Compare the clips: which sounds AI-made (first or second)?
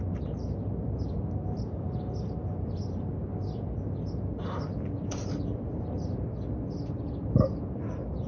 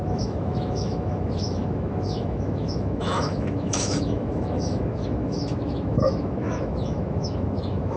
second